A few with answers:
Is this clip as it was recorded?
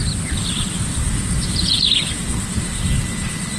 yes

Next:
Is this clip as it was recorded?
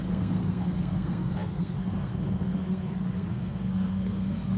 no